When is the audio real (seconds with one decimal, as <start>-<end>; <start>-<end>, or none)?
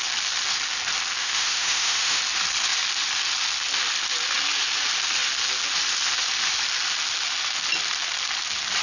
0.0-1.2; 2.2-8.8